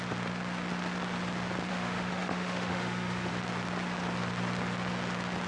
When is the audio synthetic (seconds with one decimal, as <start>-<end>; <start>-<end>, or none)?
1.7-3.3